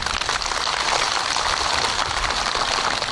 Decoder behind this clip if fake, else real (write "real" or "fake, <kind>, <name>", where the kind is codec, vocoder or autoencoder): real